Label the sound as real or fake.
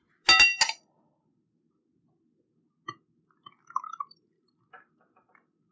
real